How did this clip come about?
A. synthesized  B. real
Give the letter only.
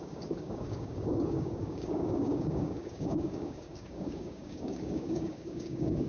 A